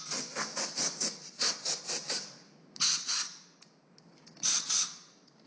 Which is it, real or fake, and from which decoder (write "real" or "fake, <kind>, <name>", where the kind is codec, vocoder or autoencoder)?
real